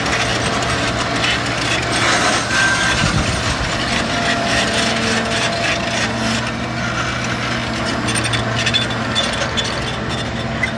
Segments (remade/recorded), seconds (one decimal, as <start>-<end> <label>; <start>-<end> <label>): 0.0-3.0 recorded; 3.0-3.8 remade; 3.8-10.8 recorded